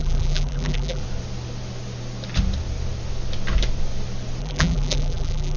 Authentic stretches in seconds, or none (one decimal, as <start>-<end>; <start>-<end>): 1.0-4.4